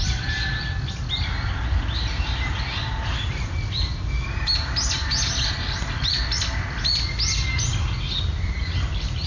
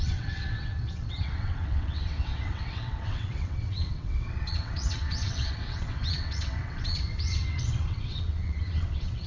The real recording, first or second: first